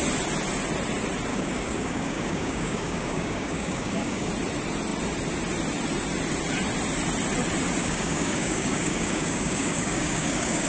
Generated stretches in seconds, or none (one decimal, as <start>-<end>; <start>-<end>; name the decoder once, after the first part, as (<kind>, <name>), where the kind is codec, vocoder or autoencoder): 1.3-4.3 (codec, DAC); 7.8-10.7